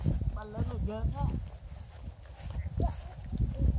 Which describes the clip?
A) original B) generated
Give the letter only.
A